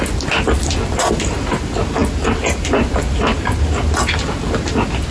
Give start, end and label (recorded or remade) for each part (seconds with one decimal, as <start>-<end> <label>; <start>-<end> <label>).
0.0-5.1 recorded